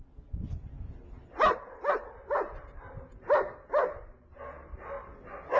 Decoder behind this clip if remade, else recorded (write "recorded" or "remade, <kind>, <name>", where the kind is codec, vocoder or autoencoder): recorded